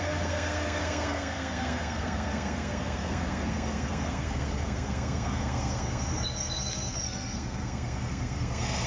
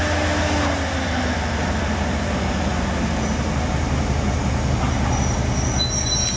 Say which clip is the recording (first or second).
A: second